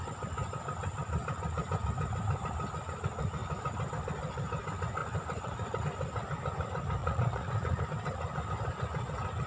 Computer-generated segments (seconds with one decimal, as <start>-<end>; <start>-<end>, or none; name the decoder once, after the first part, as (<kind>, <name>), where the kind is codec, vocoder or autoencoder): 5.0-5.8 (vocoder, Vocos); 7.0-7.8